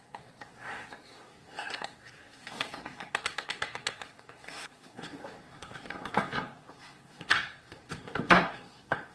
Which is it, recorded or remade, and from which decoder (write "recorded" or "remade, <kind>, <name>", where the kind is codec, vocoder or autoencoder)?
remade, codec, SNAC